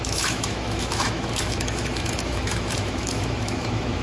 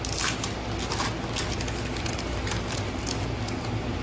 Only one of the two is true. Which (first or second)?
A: second